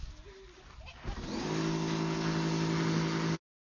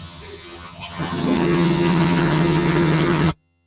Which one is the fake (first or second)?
second